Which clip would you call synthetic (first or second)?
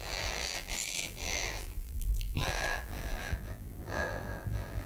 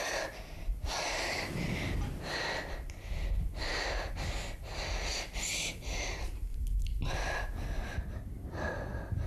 first